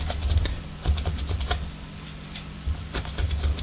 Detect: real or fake real